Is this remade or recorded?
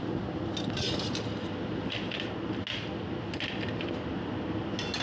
recorded